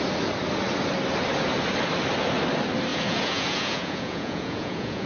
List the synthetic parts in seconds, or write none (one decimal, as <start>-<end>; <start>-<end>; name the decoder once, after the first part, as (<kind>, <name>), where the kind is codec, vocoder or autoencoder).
2.9-5.1 (vocoder, Vocos)